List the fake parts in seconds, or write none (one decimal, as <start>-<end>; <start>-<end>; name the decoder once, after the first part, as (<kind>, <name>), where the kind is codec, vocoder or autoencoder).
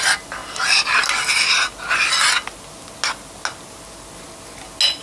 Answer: none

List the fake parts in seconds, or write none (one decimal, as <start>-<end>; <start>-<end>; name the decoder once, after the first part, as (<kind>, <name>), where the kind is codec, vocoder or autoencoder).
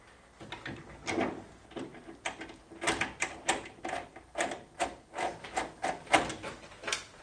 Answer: none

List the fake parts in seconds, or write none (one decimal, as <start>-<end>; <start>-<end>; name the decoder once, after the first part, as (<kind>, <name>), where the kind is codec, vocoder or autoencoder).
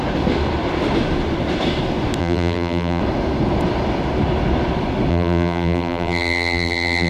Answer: 2.2-3.0 (vocoder, BigVGAN v2); 5.1-7.1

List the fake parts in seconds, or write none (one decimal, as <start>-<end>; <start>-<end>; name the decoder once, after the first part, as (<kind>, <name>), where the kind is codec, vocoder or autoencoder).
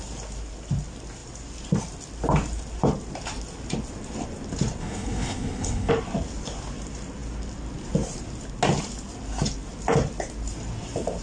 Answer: 4.8-5.9 (codec, HILCodec)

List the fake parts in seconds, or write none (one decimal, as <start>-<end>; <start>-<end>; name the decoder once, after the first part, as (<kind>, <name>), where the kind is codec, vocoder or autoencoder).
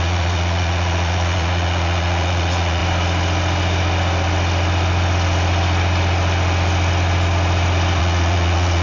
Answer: 0.0-2.8 (vocoder, Vocos); 8.0-8.8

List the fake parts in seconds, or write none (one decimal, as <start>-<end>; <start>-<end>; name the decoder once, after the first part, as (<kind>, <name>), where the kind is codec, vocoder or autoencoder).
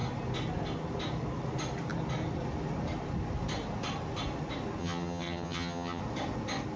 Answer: 4.8-6.0 (vocoder, HiFi-GAN)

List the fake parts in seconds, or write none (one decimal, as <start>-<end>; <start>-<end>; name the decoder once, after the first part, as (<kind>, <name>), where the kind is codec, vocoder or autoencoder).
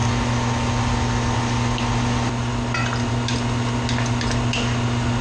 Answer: none